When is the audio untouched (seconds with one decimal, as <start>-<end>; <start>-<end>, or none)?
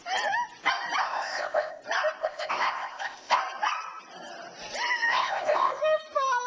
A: 0.0-1.0; 1.8-2.2; 3.4-5.1; 5.8-6.5